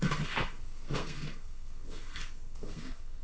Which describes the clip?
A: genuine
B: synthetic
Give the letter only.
B